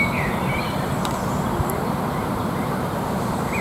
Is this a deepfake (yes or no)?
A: yes